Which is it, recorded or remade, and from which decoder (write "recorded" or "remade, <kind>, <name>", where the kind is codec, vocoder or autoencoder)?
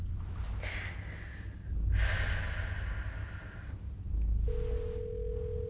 recorded